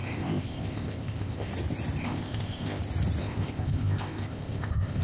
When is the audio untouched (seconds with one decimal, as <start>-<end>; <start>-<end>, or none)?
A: 1.5-2.0; 2.8-3.2